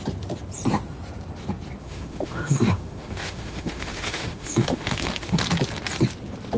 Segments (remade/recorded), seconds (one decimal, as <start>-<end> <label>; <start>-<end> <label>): 0.0-1.8 recorded; 1.8-5.4 remade; 5.4-6.6 recorded